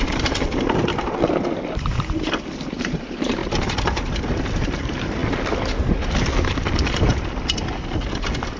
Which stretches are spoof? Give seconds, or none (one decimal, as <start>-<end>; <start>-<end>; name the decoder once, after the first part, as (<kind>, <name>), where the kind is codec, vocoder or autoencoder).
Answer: 0.0-5.2 (vocoder, BigVGAN v2); 6.4-7.1